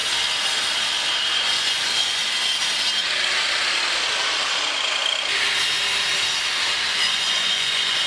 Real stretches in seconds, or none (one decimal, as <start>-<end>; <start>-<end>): 0.0-1.4; 2.2-6.9